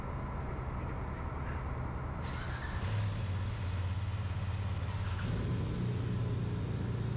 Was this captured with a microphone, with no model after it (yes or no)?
yes